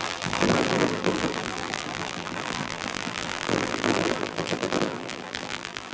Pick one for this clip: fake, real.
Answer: fake